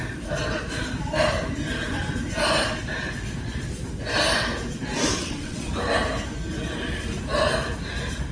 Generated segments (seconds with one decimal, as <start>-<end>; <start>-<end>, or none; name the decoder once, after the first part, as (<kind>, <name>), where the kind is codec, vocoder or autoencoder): 5.2-5.7 (vocoder, WaveNeXt)